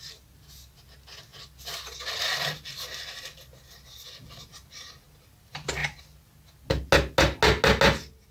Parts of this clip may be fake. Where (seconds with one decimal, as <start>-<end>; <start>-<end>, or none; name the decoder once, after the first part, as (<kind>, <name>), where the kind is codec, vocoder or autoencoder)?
none